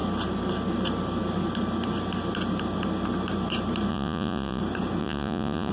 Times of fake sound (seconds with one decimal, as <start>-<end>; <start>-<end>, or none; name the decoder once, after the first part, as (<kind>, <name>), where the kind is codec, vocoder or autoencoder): 3.9-4.6 (vocoder, Vocos); 5.0-5.7